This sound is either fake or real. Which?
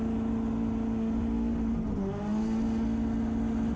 real